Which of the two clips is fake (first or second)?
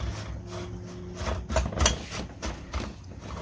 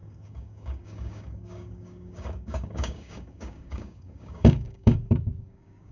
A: second